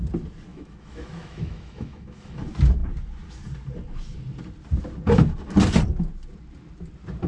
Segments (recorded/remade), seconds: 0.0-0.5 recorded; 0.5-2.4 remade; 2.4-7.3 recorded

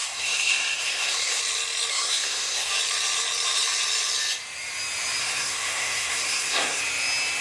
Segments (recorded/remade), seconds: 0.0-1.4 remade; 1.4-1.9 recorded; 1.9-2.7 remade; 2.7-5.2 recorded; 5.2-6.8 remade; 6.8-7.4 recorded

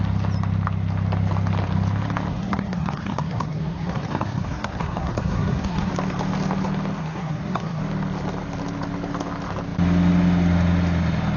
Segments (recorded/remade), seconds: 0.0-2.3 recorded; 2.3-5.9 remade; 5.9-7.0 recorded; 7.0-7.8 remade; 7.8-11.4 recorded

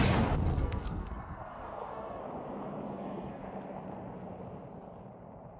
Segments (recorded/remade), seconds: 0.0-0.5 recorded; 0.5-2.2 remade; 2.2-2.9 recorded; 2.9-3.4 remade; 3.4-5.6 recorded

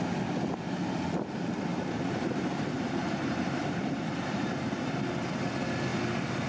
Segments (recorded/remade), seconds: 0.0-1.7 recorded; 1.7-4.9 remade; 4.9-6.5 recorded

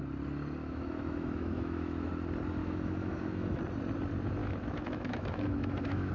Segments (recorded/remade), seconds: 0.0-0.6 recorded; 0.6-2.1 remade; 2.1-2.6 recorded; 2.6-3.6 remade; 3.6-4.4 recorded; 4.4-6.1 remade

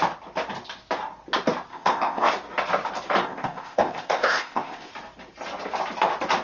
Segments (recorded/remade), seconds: 0.0-1.7 recorded; 1.7-2.3 remade; 2.3-3.2 recorded; 3.2-4.9 remade; 4.9-6.4 recorded

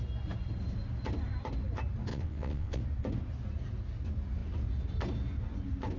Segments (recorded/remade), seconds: 0.0-2.1 recorded; 2.1-2.8 remade; 2.8-6.0 recorded